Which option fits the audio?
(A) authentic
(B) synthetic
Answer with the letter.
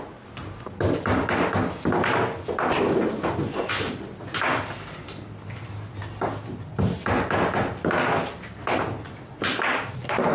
A